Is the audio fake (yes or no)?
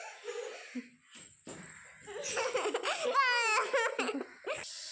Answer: no